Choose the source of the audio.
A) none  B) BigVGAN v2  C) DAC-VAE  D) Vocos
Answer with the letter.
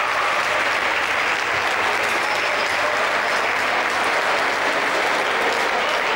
A